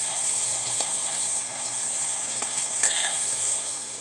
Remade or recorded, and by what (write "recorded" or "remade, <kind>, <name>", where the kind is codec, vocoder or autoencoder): remade, codec, SNAC